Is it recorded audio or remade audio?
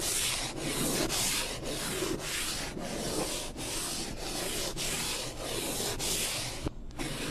recorded